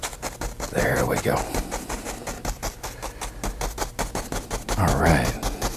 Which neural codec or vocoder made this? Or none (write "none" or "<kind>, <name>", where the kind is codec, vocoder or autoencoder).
none